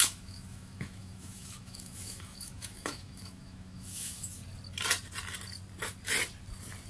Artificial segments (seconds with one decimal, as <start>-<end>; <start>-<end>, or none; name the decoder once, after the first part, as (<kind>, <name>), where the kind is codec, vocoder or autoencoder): 0.0-4.4 (autoencoder, DAC-VAE)